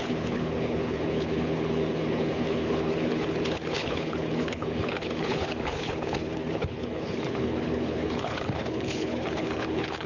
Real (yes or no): no